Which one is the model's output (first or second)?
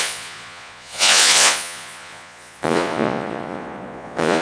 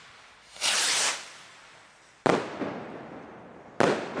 first